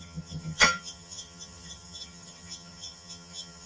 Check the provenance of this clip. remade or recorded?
remade